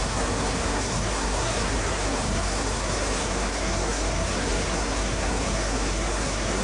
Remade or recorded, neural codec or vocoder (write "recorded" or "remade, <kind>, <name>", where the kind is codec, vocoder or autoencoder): remade, codec, SNAC